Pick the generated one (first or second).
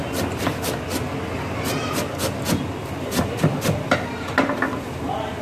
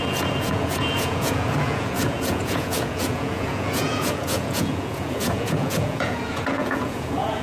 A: second